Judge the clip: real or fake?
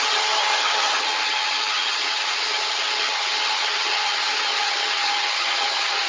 fake